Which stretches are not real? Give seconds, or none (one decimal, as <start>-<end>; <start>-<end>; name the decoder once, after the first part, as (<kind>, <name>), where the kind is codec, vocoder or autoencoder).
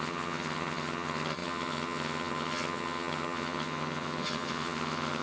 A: 0.0-5.2 (vocoder, HiFi-GAN)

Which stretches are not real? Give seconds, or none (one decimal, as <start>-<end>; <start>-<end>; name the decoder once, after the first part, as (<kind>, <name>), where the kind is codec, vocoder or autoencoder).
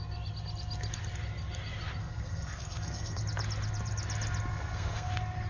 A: 2.0-3.2 (codec, SNAC); 4.5-5.1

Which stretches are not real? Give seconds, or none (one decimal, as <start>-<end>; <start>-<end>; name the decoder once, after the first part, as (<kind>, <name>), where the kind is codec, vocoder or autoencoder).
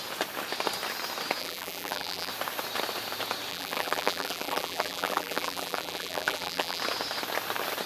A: 1.4-2.3 (vocoder, BigVGAN v2); 3.5-6.8